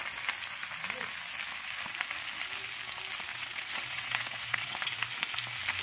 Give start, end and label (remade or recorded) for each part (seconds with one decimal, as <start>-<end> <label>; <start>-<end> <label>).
0.0-3.3 recorded; 3.3-4.9 remade; 4.9-5.8 recorded